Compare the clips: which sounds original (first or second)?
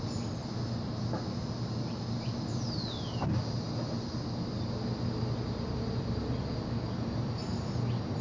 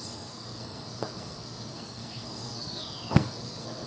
first